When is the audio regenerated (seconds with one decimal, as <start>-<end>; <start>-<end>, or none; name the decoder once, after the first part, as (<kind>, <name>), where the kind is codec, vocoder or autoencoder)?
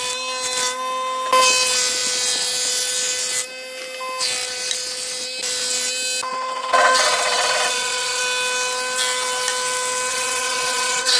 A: 6.3-8.2 (vocoder, WaveNeXt); 10.1-11.2